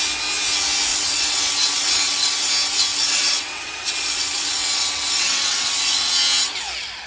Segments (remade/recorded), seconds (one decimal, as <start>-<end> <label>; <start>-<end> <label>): 0.0-0.9 recorded; 0.9-2.5 remade; 2.5-2.9 recorded; 2.9-6.1 remade; 6.1-7.1 recorded

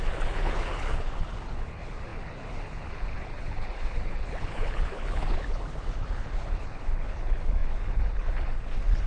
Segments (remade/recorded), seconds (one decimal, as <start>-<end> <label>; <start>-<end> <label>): 0.0-9.1 remade

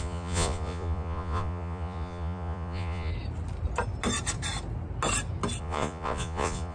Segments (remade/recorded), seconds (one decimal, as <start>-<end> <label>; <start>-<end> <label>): 0.0-3.1 remade; 3.1-5.6 recorded; 5.6-6.7 remade

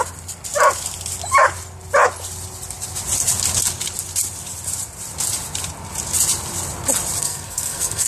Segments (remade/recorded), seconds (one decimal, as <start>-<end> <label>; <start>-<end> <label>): 0.0-7.2 recorded; 7.2-8.1 remade